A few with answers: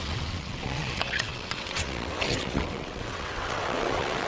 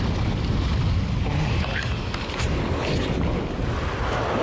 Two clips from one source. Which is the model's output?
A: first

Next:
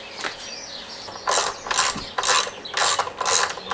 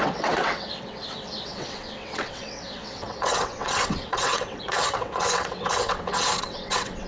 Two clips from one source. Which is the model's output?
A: second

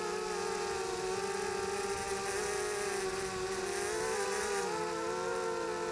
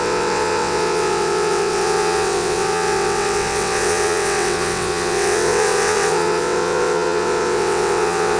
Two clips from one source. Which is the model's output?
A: second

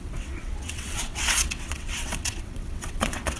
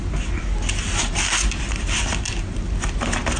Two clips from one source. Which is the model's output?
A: first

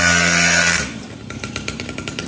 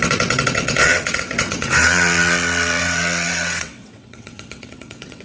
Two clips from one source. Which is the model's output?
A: second